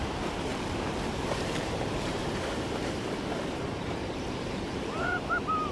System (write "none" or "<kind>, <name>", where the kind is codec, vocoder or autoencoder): vocoder, BigVGAN v2